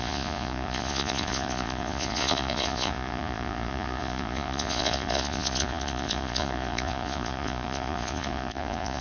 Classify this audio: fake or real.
fake